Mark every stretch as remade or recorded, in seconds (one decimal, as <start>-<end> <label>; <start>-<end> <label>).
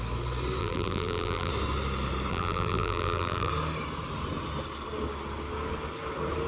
0.0-0.6 recorded; 0.6-1.5 remade; 1.5-2.3 recorded; 2.3-3.5 remade; 3.5-6.5 recorded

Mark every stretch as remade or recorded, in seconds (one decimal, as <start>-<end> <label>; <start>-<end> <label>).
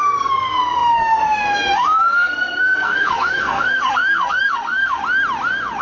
0.0-5.0 remade; 5.0-5.8 recorded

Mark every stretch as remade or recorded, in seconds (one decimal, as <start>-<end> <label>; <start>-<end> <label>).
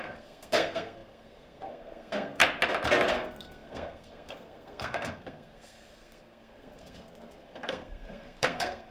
0.0-2.4 remade; 2.4-3.1 recorded; 3.1-8.9 remade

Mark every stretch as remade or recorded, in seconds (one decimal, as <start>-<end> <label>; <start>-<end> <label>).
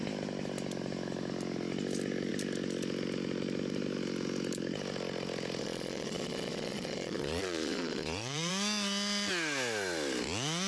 0.0-5.6 recorded; 5.6-8.5 remade; 8.5-10.7 recorded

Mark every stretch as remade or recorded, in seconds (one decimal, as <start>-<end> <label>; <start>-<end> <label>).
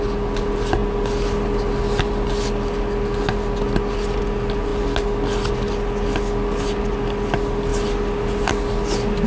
0.0-9.3 recorded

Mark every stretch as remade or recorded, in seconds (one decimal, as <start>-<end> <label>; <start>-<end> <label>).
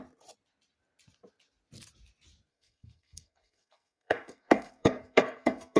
0.0-2.5 recorded; 2.5-5.8 remade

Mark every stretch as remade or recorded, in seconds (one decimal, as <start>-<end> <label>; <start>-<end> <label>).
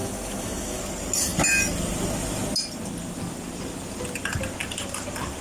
0.0-0.8 remade; 0.8-5.4 recorded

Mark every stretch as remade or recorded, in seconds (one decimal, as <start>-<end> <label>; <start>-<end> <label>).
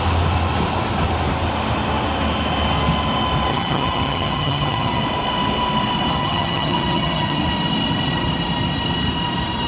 0.0-3.5 recorded; 3.5-5.0 remade; 5.0-6.1 recorded; 6.1-7.4 remade; 7.4-9.7 recorded